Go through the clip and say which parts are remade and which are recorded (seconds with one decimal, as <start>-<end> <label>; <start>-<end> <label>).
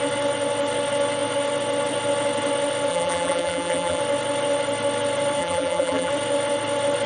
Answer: 0.0-2.9 recorded; 2.9-4.0 remade; 4.0-5.4 recorded; 5.4-6.1 remade; 6.1-7.1 recorded